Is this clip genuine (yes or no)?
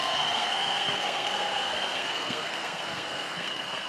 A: no